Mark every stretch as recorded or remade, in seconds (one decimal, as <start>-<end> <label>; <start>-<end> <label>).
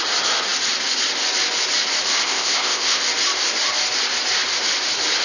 0.0-2.2 recorded; 2.2-3.0 remade; 3.0-5.2 recorded